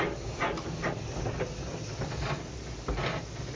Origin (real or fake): real